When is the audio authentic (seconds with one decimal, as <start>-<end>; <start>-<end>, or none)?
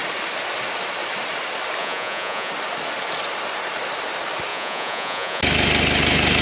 0.0-1.8; 2.5-4.5; 5.4-6.4